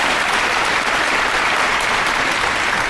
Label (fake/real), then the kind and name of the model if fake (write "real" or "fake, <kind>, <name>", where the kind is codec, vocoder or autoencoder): fake, vocoder, BigVGAN v2